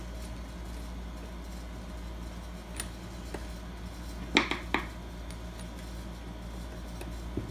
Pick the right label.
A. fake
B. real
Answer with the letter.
B